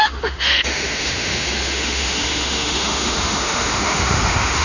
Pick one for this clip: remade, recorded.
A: remade